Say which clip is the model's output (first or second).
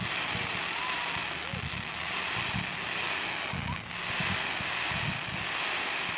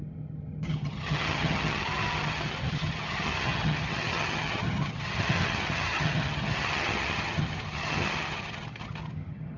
second